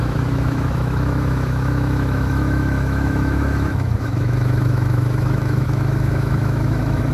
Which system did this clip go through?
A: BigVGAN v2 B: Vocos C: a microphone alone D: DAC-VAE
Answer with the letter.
D